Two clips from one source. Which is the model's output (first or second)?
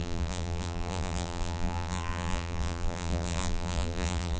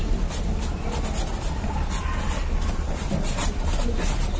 first